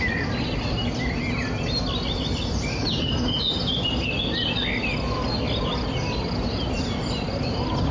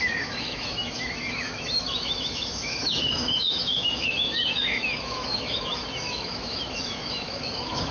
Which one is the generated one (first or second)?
second